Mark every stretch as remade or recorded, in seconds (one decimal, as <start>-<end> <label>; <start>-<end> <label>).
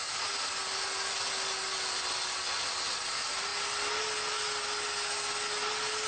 0.0-6.1 recorded